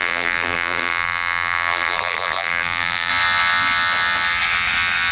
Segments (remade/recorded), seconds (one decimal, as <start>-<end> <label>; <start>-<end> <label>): 0.0-3.1 remade; 3.1-5.1 recorded